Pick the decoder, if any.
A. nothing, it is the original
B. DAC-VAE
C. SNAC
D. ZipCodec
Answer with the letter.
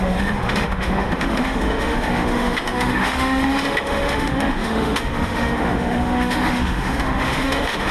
B